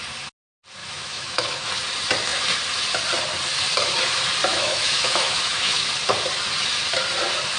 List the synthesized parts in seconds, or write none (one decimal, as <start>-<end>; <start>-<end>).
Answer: 0.8-1.7; 4.5-5.9